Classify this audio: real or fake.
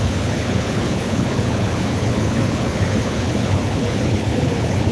fake